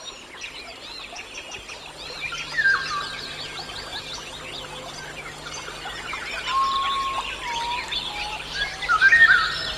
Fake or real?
real